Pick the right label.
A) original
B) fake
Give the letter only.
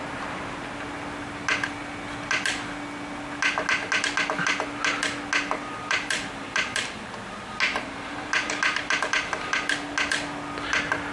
A